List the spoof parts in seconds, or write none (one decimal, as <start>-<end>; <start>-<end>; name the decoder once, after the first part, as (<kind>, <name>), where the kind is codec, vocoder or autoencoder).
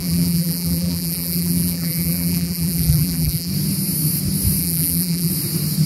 0.0-3.5 (vocoder, BigVGAN v2); 4.6-5.3